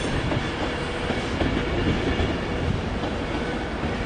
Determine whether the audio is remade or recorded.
recorded